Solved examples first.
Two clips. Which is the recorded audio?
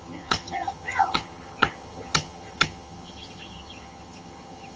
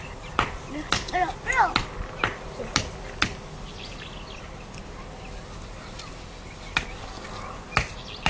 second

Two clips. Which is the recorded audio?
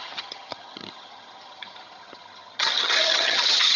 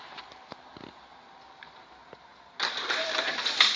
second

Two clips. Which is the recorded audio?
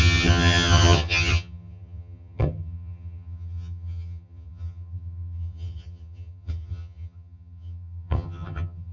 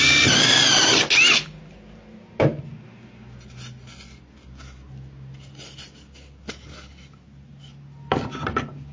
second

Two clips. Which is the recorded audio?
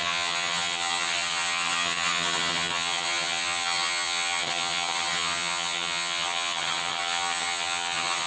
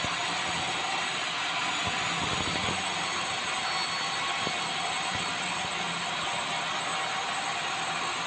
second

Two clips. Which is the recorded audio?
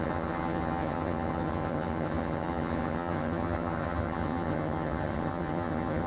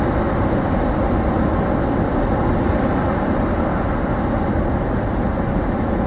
second